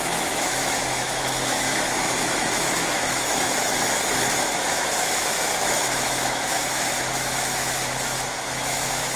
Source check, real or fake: fake